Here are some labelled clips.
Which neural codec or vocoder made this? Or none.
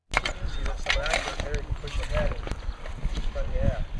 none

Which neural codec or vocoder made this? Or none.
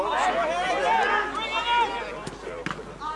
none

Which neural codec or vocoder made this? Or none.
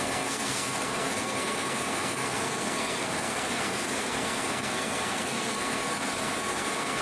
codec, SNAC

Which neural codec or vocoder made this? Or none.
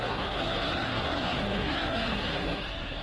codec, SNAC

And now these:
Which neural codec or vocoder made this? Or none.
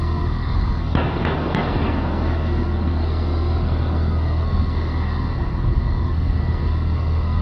codec, SNAC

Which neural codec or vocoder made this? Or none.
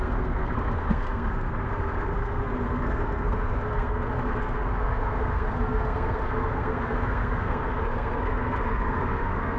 codec, SNAC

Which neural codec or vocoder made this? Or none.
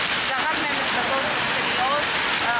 none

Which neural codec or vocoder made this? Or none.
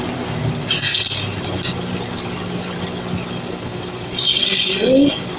none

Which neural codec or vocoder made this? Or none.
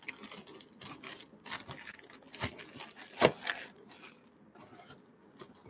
none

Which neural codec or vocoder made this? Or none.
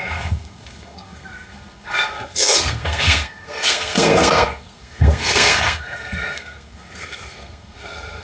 codec, SNAC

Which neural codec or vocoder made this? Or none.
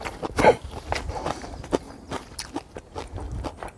none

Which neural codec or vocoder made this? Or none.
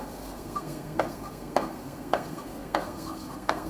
codec, SNAC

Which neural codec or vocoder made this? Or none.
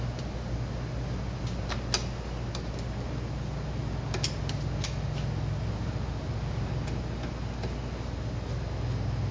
none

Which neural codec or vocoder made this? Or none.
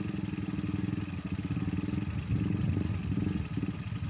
none